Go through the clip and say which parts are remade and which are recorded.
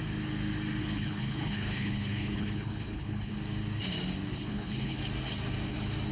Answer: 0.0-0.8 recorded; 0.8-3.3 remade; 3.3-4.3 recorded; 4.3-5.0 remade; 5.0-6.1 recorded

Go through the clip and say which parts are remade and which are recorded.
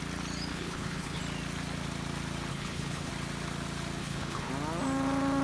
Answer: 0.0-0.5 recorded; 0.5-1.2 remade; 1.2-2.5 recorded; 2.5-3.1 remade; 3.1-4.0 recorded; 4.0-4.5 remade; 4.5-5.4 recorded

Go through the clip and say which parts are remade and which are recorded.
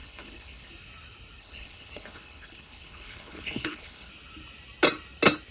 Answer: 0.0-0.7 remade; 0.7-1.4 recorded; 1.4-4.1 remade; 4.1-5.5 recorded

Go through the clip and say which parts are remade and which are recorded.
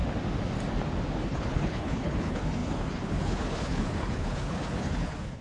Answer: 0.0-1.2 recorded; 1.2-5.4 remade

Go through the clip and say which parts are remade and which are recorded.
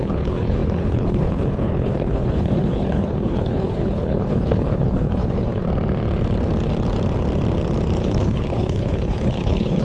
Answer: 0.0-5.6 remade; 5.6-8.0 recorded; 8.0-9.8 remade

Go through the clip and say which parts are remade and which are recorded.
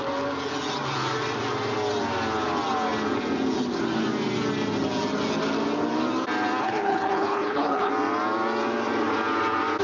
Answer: 0.0-6.6 recorded; 6.6-7.9 remade; 7.9-9.8 recorded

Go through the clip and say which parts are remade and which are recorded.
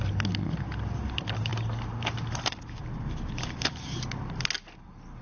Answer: 0.0-5.2 recorded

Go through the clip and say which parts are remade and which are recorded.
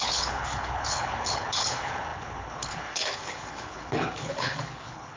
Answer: 0.0-5.2 remade